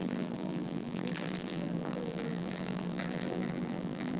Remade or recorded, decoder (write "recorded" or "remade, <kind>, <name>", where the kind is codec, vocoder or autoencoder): remade, vocoder, BigVGAN v2